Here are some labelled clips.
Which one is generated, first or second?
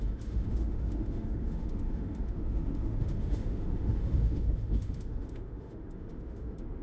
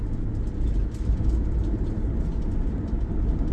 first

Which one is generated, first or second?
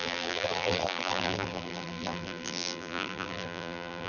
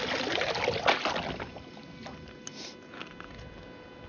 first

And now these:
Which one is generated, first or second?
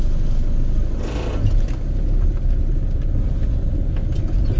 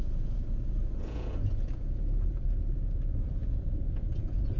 second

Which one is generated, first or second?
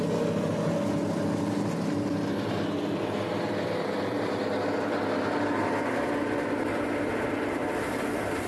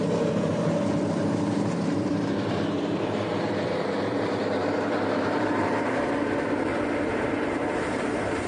second